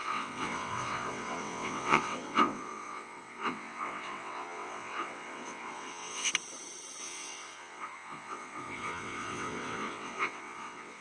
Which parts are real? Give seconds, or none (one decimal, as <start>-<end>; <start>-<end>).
6.3-7.0